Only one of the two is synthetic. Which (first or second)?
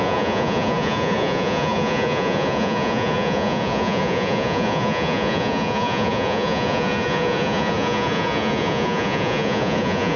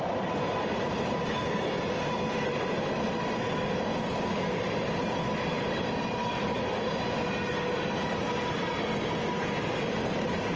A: first